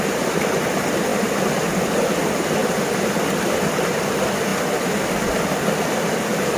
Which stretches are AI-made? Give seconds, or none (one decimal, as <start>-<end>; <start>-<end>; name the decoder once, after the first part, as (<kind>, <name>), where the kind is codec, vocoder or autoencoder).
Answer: none